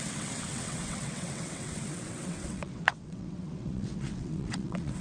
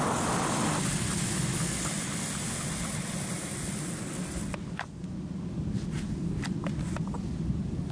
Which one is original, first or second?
second